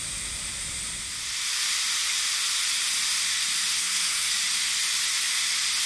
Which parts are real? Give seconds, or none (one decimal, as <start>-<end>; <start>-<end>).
0.0-3.8; 4.3-5.9